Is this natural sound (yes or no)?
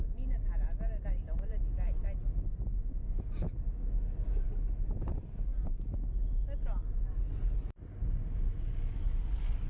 yes